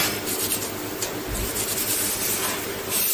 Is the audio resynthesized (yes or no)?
no